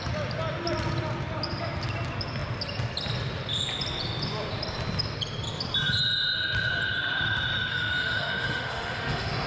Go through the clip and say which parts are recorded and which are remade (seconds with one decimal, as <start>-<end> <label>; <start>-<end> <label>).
0.0-7.7 recorded; 7.7-9.5 remade